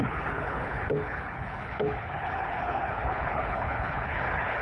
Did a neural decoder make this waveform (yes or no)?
yes